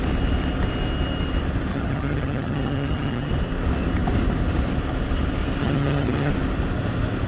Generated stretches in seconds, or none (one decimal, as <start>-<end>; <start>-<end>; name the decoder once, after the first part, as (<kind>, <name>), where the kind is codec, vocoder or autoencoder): 1.7-3.3 (vocoder, HiFi-GAN); 5.6-6.3